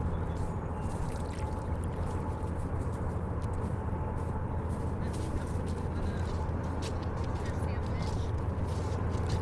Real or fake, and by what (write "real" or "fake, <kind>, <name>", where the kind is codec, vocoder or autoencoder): real